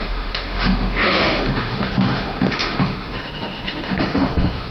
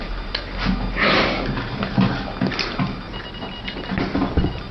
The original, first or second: second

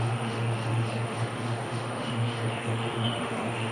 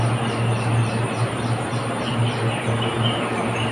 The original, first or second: second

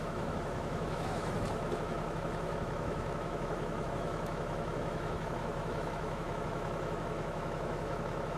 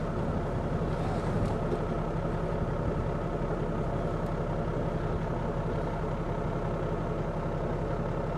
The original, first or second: second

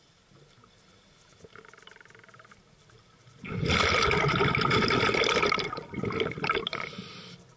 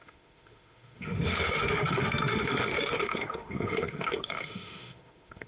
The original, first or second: first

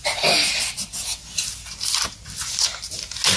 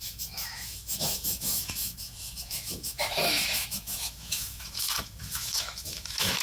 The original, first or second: first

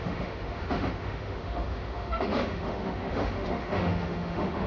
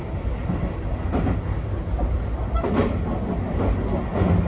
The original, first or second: second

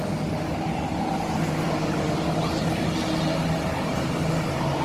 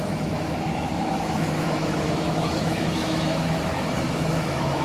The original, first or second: first